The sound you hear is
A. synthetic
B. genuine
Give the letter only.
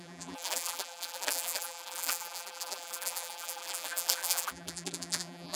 A